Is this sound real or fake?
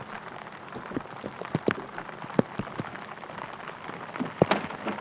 real